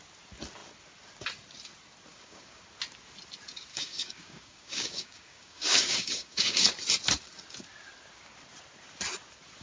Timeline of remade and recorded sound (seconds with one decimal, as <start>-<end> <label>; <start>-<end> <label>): 0.0-2.1 recorded; 2.1-2.6 remade; 2.6-3.7 recorded; 3.7-6.7 remade; 6.7-9.6 recorded